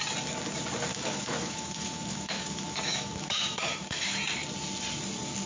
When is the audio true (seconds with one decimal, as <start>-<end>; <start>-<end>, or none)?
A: 0.0-0.9; 4.2-5.5